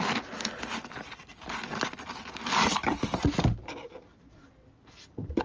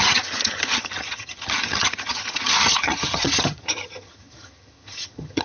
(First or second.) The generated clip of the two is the second